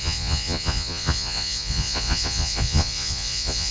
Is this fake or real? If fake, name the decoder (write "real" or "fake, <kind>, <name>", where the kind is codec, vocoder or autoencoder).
fake, vocoder, Vocos